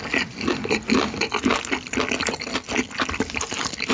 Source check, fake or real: real